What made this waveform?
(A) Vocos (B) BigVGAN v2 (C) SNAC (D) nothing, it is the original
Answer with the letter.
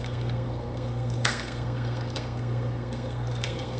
C